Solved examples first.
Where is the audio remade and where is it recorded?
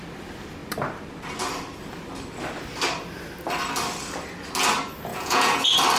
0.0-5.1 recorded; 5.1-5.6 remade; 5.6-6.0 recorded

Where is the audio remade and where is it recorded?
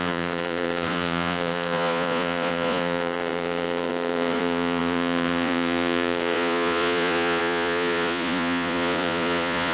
0.0-9.7 remade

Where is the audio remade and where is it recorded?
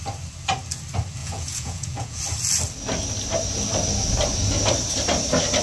0.0-1.2 recorded; 1.2-2.2 remade; 2.2-5.6 recorded